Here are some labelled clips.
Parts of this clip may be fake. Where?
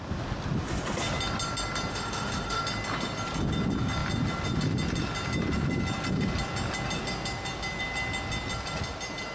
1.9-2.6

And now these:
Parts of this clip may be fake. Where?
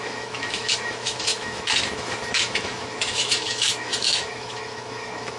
0.0-5.4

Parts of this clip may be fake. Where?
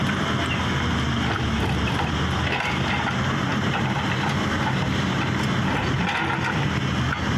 none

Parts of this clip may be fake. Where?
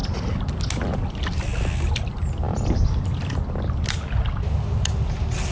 none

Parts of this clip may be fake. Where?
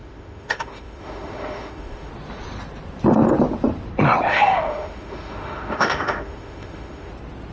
0.0-2.1; 4.3-7.1